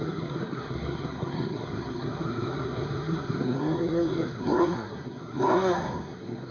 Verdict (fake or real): fake